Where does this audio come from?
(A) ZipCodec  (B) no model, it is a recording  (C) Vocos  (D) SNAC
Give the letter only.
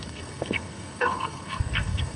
D